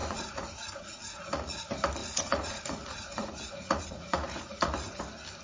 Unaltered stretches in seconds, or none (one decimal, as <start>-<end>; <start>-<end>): 1.6-2.0; 5.0-5.4